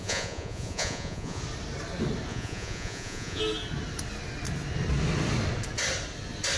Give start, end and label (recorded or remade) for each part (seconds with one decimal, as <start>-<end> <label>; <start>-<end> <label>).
0.0-1.4 remade; 1.4-2.3 recorded; 2.3-3.4 remade; 3.4-6.6 recorded